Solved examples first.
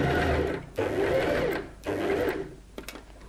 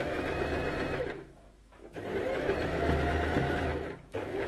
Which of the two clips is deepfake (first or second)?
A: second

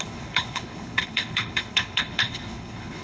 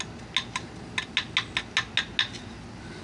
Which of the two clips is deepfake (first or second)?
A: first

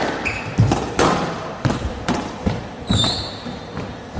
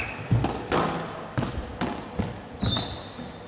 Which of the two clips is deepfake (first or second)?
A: first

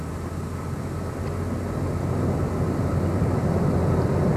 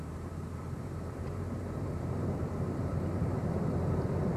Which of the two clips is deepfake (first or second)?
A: second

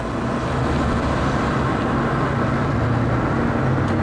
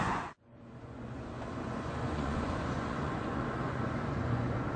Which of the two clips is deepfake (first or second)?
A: second